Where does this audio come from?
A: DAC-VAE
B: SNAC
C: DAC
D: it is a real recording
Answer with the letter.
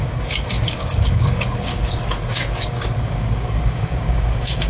C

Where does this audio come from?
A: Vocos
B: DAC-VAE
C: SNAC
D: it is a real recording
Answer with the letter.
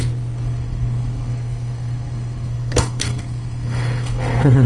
C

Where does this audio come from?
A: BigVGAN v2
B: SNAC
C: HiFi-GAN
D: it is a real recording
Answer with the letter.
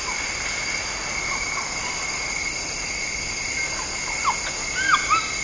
D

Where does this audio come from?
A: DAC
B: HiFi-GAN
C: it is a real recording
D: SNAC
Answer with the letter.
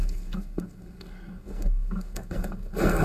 D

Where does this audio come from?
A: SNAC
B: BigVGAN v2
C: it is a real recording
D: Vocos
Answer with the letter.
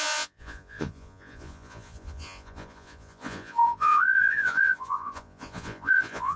D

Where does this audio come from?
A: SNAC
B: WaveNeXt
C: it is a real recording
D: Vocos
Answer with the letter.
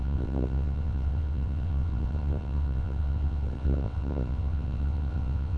B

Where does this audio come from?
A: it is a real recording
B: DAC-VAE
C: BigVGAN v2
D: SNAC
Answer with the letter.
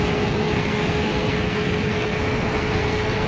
D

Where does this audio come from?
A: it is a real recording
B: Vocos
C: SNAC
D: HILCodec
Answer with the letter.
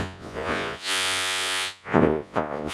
B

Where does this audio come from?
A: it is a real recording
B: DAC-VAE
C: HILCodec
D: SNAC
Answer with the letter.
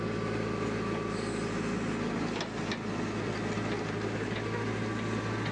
A